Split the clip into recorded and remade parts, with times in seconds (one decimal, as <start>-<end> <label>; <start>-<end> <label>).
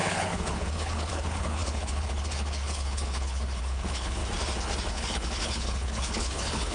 0.0-4.2 remade; 4.2-4.9 recorded; 4.9-6.7 remade